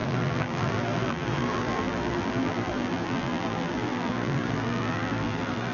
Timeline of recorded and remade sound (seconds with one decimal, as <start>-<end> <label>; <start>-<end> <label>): 0.0-5.7 remade